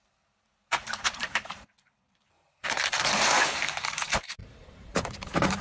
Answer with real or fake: fake